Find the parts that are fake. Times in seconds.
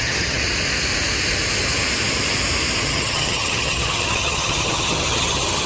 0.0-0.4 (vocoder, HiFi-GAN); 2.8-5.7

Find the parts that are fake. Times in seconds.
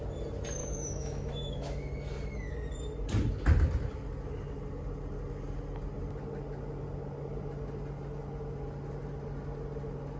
0.6-1.9 (autoencoder, DAC-VAE)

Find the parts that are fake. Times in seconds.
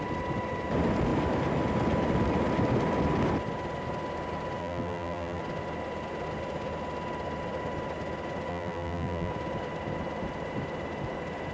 4.6-5.4 (vocoder, BigVGAN v2); 8.5-9.3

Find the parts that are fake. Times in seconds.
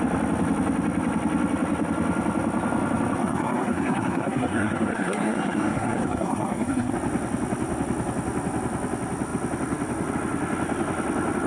3.2-6.9 (codec, SNAC)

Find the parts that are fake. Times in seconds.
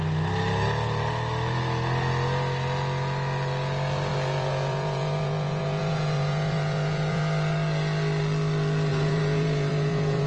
4.1-7.2 (vocoder, Vocos); 8.9-10.3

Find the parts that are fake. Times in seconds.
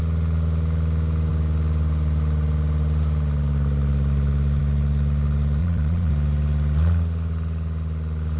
5.6-6.1 (vocoder, Vocos)